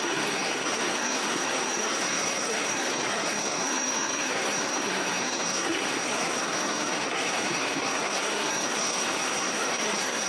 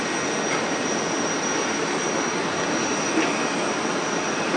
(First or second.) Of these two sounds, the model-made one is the first